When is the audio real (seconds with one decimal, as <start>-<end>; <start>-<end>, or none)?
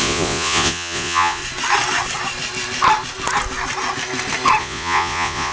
1.4-4.6